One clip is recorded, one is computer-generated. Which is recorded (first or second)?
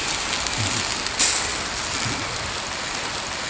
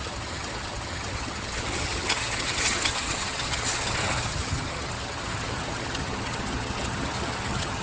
first